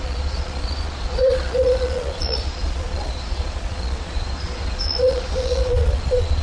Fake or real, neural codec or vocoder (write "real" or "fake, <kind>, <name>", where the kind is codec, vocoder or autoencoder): fake, vocoder, Vocos